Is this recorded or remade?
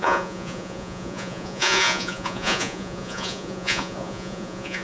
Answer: remade